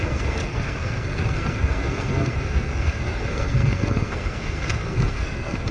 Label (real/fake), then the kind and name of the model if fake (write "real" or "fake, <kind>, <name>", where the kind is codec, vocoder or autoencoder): fake, codec, SNAC